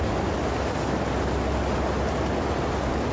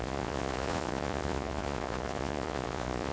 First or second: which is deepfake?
second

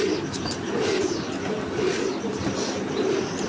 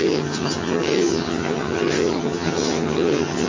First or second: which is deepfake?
second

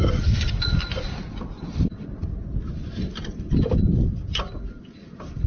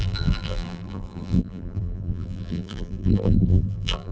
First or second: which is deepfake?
second